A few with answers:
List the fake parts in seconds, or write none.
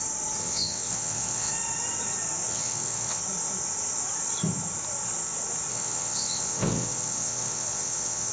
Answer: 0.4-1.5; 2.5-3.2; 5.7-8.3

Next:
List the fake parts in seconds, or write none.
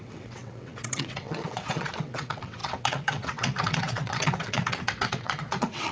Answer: 0.0-5.9